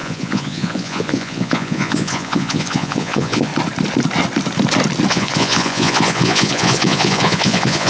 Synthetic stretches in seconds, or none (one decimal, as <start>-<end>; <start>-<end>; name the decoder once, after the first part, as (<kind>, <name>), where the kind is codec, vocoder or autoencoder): 0.0-3.5 (vocoder, Vocos); 5.1-7.9